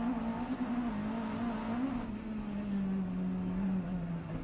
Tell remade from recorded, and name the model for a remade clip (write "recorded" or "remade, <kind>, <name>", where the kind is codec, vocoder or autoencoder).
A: recorded